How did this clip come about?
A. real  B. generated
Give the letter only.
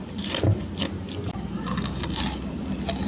A